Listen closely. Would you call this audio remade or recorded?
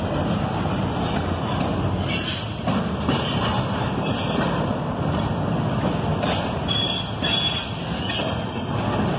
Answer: recorded